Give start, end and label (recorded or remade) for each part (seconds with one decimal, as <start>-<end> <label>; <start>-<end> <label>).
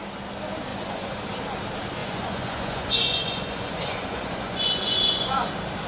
0.0-0.7 recorded; 0.7-1.2 remade; 1.2-2.0 recorded; 2.0-5.5 remade; 5.5-5.9 recorded